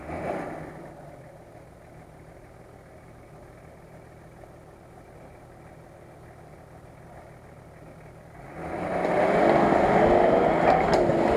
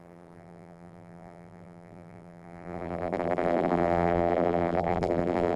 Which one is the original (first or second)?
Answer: first